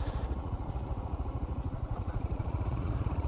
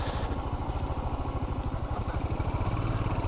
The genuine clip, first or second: second